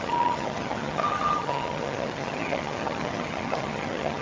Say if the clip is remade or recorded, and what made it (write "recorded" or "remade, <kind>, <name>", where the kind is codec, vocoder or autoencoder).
remade, vocoder, HiFi-GAN